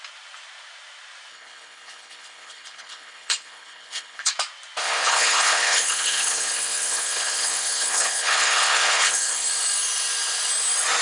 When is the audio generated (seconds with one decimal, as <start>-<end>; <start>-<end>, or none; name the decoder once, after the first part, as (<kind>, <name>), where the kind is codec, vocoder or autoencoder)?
1.3-4.3 (codec, HILCodec); 4.8-9.5